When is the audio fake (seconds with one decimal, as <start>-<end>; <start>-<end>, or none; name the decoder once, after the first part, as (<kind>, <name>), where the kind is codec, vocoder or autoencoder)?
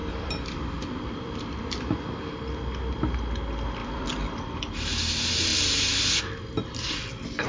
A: 0.0-2.4 (vocoder, BigVGAN v2); 3.8-4.7